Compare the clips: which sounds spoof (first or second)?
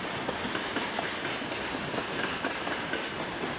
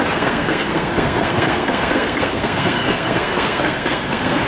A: second